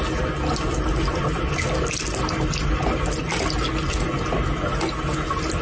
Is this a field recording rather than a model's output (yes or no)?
yes